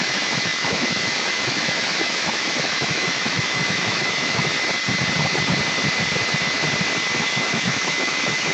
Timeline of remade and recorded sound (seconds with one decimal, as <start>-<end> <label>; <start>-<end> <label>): 0.0-4.5 remade; 4.5-7.2 recorded; 7.2-8.5 remade